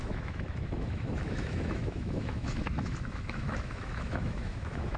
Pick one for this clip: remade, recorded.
remade